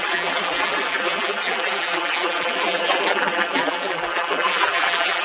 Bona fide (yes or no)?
no